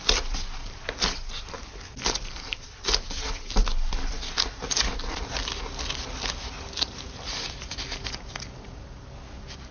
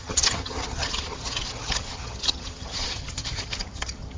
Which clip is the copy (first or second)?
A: second